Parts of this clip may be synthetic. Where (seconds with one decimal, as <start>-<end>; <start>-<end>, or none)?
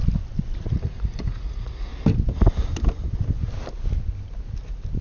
0.7-1.9